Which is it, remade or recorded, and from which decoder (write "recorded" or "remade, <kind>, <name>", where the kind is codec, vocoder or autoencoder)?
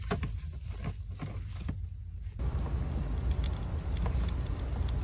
recorded